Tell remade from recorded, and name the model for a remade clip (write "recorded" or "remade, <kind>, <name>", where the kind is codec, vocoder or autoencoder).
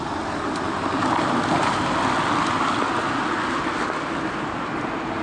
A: recorded